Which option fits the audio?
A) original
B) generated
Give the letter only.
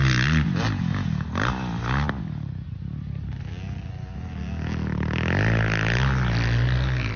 A